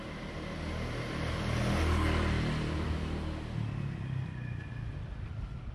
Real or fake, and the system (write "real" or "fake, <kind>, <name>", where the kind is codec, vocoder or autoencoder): real